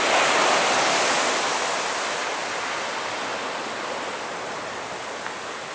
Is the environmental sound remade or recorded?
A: recorded